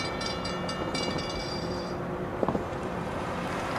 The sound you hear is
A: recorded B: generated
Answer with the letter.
B